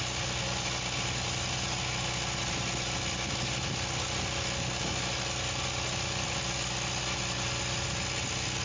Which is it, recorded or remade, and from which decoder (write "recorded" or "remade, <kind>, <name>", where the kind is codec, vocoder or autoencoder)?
recorded